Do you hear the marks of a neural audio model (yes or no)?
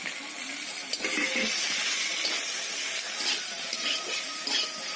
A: no